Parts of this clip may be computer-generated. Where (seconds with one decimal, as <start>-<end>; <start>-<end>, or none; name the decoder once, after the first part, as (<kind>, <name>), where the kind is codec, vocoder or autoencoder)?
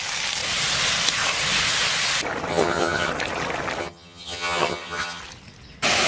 2.5-3.1 (vocoder, HiFi-GAN); 3.8-5.2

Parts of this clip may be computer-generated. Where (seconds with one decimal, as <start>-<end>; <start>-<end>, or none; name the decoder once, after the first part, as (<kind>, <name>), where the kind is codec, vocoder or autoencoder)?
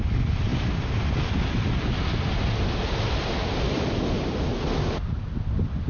none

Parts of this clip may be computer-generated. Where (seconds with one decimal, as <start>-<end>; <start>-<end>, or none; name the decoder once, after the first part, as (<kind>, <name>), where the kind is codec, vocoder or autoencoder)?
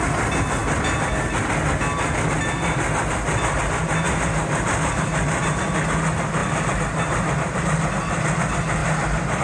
none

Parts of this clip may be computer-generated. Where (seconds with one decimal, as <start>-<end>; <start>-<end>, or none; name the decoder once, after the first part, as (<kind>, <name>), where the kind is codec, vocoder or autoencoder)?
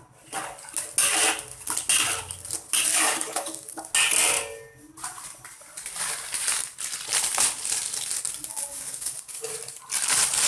2.9-3.9 (codec, DAC); 8.5-9.5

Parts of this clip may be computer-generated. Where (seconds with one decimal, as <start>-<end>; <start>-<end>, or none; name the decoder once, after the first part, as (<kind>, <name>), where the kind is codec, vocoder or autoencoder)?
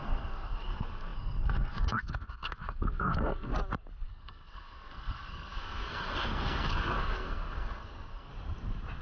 0.0-3.5 (codec, SNAC); 4.1-8.3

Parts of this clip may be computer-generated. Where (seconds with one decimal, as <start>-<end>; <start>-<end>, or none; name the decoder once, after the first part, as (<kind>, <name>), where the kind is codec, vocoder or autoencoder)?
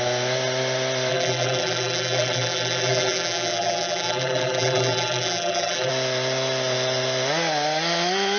1.1-5.9 (vocoder, BigVGAN v2)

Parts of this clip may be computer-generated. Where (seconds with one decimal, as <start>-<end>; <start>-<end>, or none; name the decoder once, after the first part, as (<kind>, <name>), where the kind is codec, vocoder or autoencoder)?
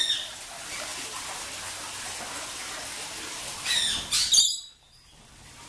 none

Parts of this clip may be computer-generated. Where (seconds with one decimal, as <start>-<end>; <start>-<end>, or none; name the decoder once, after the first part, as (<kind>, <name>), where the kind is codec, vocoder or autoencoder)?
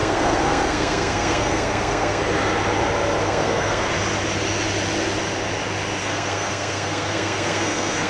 0.0-2.2 (codec, SNAC); 3.2-3.9; 6.0-8.1